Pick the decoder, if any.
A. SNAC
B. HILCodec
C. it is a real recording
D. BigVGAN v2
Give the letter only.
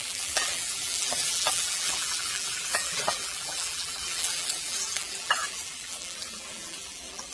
D